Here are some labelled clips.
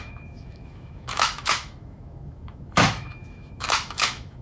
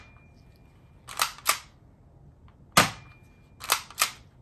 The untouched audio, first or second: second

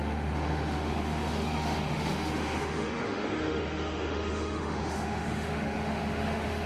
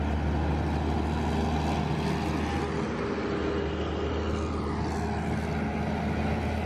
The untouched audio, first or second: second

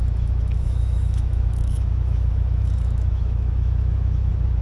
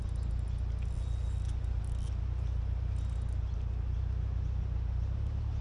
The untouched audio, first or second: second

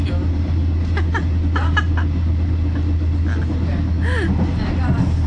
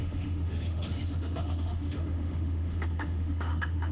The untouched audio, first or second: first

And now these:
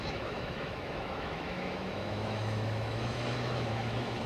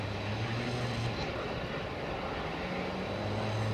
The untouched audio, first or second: second